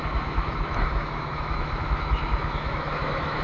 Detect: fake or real fake